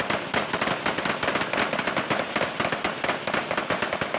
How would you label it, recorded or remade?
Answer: recorded